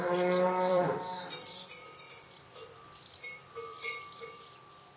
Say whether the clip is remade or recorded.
remade